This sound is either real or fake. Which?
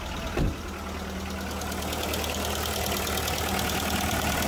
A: real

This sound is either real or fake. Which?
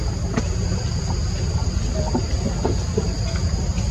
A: real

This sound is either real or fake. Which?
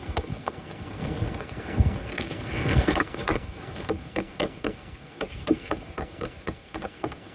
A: fake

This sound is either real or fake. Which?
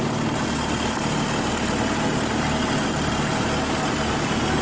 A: real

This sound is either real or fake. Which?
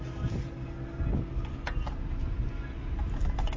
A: real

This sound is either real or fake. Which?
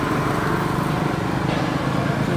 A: real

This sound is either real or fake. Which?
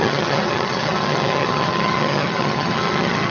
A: fake